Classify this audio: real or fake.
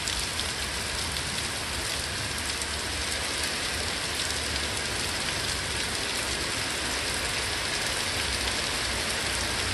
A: real